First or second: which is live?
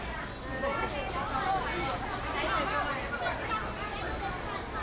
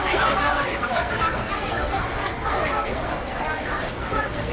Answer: first